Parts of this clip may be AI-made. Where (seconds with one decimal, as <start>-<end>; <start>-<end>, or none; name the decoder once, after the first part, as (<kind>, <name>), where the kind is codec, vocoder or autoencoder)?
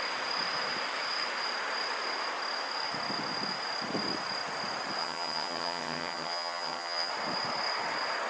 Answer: 5.0-7.1 (vocoder, HiFi-GAN)